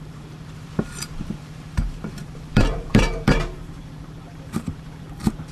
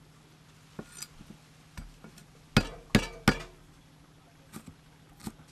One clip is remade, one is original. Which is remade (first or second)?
first